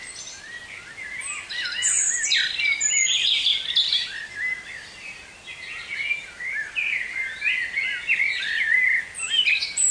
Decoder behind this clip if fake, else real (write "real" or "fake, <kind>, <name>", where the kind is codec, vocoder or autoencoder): real